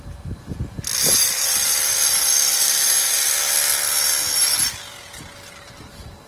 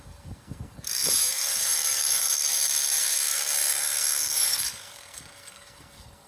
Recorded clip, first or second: first